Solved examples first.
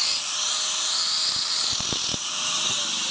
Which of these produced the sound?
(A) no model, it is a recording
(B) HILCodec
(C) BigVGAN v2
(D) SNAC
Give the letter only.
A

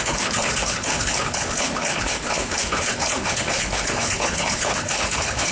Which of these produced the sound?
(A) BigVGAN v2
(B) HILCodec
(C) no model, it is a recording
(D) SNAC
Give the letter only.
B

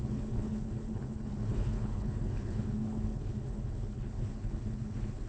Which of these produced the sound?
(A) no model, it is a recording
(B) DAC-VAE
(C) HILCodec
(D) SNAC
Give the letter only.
C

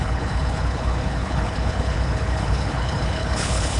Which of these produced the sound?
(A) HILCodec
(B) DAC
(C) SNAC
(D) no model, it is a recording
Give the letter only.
A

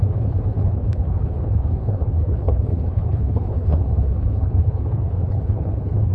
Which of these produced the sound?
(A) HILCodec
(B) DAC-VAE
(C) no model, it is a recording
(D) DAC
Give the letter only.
A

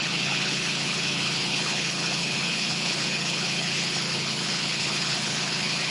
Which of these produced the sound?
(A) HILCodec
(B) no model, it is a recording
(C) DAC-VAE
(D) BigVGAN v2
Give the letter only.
A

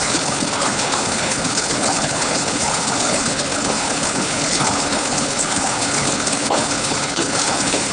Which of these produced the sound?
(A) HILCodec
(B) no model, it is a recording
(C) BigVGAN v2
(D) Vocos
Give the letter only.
A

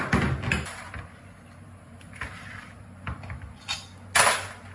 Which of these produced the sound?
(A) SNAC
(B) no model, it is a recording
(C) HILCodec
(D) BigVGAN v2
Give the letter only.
B